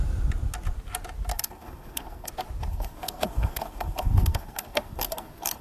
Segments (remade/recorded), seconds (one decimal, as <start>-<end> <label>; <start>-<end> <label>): 0.0-1.3 recorded; 1.3-2.3 remade; 2.3-2.7 recorded; 2.7-5.6 remade